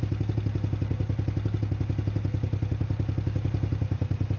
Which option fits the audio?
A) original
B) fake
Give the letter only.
A